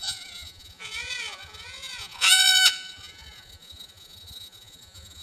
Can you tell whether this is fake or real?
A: fake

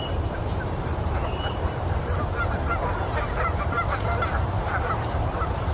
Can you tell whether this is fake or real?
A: fake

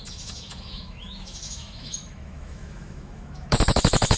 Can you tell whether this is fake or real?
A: fake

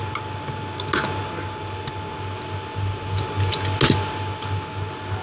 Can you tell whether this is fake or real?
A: real